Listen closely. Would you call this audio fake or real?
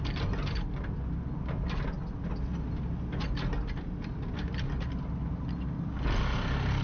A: real